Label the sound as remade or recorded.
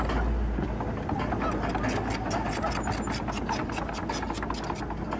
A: recorded